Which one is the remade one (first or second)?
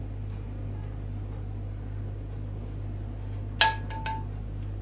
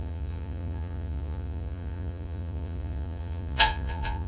second